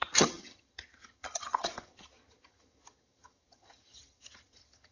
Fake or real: fake